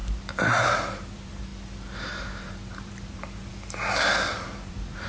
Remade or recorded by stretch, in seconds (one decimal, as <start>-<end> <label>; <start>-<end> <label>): 0.0-1.5 remade; 1.5-2.1 recorded; 2.1-3.5 remade; 3.5-4.3 recorded; 4.3-5.1 remade